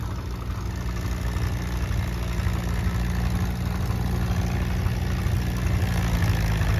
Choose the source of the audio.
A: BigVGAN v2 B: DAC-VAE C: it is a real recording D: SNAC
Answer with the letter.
C